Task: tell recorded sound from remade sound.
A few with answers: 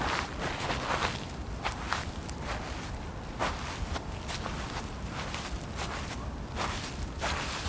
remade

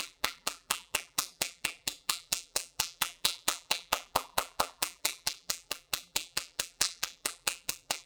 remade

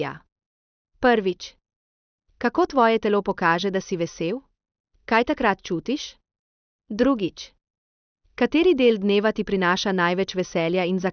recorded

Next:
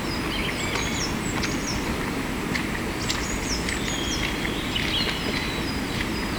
recorded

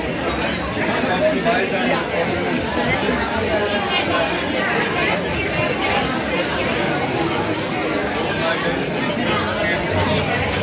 recorded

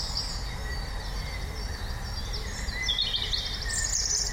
recorded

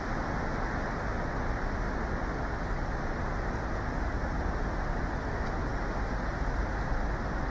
recorded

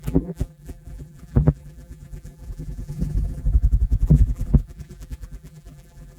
remade